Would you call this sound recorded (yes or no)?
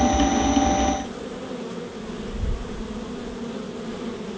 yes